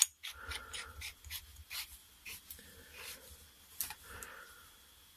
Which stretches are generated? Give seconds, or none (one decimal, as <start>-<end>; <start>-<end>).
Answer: none